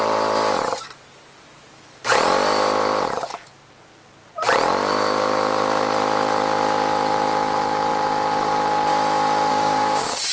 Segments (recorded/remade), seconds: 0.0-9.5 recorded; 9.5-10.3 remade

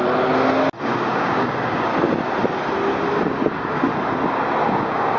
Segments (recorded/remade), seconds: 0.0-0.8 recorded; 0.8-1.9 remade; 1.9-3.5 recorded; 3.5-3.9 remade; 3.9-4.7 recorded; 4.7-5.2 remade

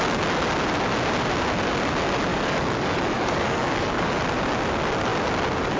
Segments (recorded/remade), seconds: 0.0-2.3 recorded; 2.3-4.1 remade; 4.1-5.8 recorded

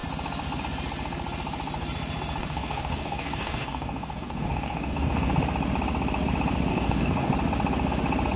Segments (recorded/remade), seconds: 0.0-2.4 recorded; 2.4-5.3 remade; 5.3-6.7 recorded; 6.7-7.3 remade; 7.3-8.4 recorded

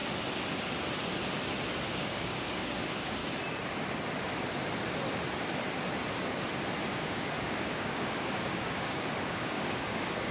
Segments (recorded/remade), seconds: 0.0-1.9 recorded; 1.9-3.2 remade; 3.2-6.9 recorded; 6.9-10.3 remade

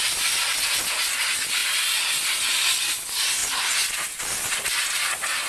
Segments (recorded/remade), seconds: 0.0-5.5 recorded